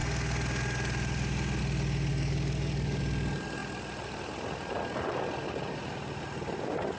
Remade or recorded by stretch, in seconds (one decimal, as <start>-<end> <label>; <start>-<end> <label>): 0.0-2.1 recorded; 2.1-3.0 remade; 3.0-7.0 recorded